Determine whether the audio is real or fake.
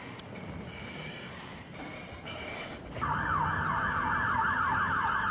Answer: real